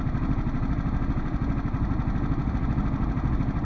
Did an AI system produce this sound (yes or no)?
no